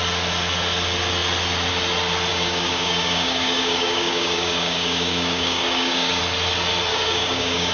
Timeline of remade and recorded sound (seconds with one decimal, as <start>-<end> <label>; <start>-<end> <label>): 0.0-2.3 recorded; 2.3-6.2 remade; 6.2-6.9 recorded; 6.9-7.7 remade